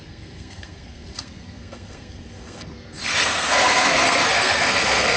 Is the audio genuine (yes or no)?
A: no